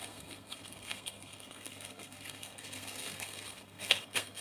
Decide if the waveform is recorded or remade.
remade